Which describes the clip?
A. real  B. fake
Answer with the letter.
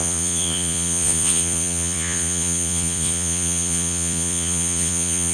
B